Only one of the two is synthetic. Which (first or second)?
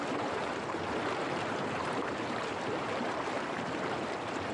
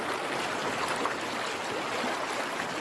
first